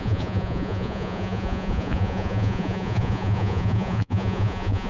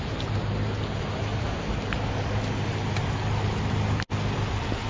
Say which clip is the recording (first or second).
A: second